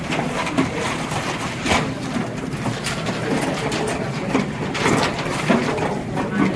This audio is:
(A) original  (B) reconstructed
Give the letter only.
A